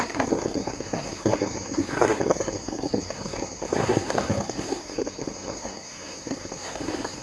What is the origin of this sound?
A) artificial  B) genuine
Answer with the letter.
A